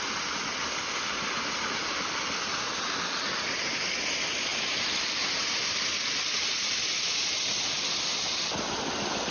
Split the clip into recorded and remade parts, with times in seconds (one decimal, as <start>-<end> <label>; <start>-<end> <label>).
0.0-9.3 recorded